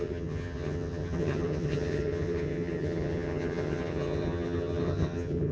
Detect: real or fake fake